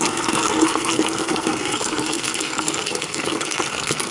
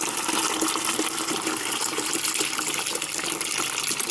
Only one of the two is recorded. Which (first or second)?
second